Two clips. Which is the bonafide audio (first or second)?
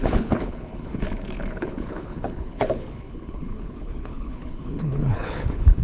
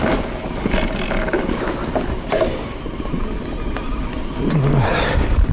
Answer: second